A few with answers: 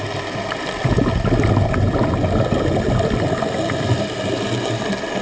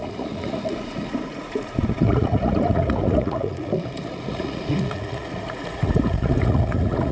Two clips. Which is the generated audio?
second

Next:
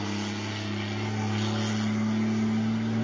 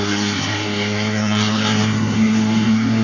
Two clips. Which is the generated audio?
second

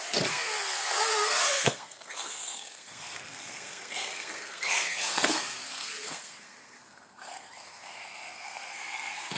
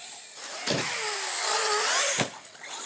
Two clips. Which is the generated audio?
first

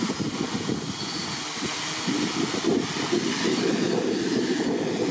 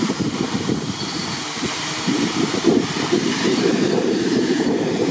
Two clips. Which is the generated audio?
second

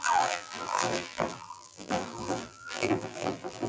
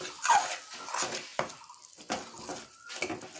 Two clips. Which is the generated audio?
first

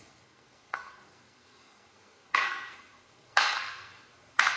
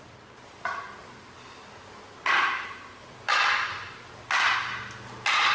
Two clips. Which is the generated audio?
first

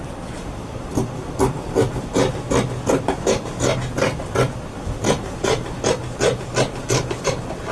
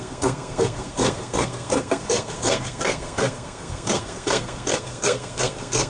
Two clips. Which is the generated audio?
second